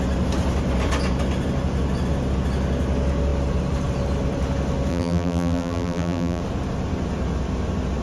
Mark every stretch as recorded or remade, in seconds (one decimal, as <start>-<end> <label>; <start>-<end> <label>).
0.0-4.9 recorded; 4.9-6.4 remade; 6.4-8.0 recorded